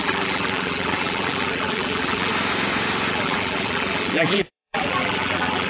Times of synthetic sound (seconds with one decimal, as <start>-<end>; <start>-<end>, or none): 0.0-2.3; 3.1-5.7